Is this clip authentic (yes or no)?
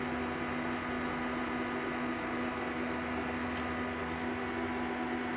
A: yes